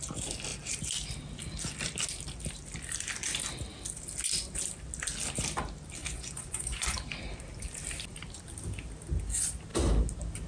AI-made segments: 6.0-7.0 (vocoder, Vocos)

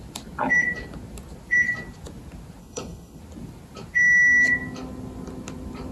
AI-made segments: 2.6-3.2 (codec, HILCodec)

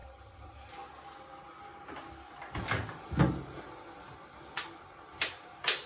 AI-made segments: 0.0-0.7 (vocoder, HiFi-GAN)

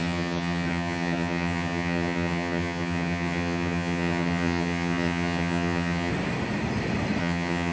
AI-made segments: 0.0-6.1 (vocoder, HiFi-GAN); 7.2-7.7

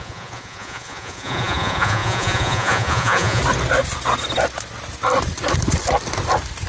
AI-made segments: 0.0-3.4 (vocoder, Vocos)

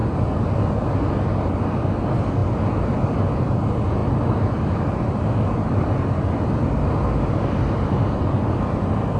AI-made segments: none

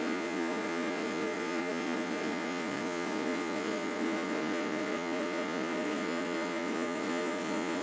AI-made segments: 0.0-7.8 (vocoder, Vocos)

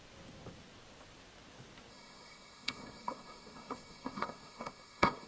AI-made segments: 1.9-5.3 (codec, SNAC)